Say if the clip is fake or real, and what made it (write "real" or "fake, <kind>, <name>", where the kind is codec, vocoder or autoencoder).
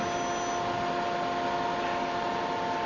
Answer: real